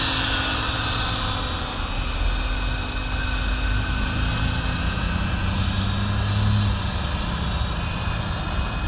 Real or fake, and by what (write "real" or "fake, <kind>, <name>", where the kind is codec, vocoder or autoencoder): real